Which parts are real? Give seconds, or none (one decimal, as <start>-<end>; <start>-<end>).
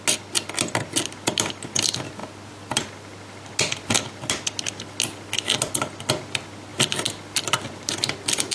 0.0-8.5